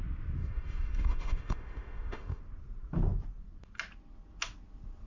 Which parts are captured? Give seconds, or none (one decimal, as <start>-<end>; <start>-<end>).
0.0-0.4; 2.4-5.1